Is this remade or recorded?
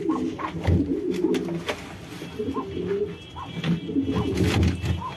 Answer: recorded